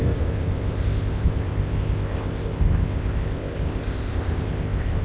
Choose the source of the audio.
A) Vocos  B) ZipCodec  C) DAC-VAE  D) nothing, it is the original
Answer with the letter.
B